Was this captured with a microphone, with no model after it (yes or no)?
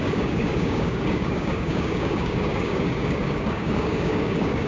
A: no